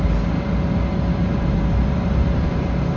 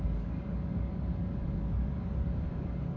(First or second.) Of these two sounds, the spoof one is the second